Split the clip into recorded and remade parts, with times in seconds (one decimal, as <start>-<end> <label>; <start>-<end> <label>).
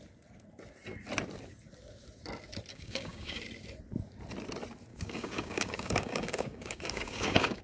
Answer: 0.0-2.7 recorded; 2.7-3.4 remade; 3.4-4.9 recorded; 4.9-7.6 remade